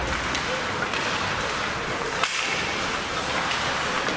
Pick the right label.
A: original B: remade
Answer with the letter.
A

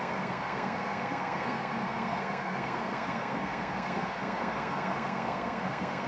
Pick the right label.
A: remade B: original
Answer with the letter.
A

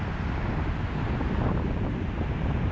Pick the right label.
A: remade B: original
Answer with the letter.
B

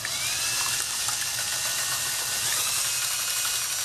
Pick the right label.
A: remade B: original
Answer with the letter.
B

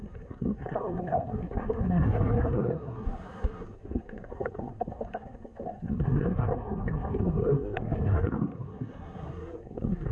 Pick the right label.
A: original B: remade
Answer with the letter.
B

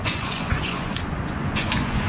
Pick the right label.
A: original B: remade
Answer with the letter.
B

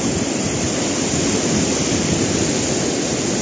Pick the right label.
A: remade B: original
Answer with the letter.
B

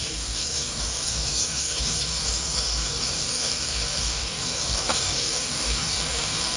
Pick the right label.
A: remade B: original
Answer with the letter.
A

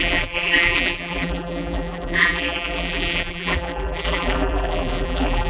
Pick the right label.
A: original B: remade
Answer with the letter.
B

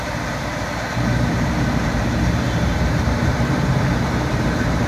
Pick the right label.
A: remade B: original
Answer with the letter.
A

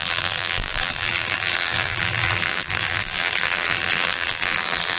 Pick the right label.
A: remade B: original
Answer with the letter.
A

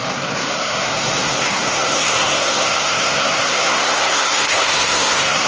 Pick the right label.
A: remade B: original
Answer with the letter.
A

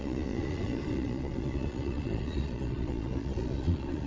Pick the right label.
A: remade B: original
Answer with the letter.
A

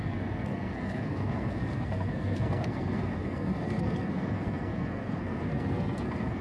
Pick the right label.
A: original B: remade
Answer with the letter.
B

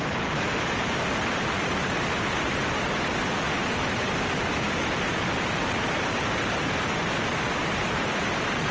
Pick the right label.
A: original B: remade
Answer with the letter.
B